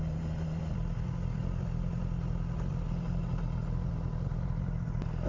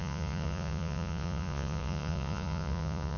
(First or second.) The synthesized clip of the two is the second